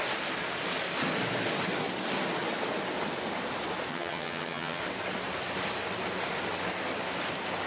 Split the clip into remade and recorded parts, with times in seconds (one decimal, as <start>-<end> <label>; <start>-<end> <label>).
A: 0.0-3.9 recorded; 3.9-4.8 remade; 4.8-7.7 recorded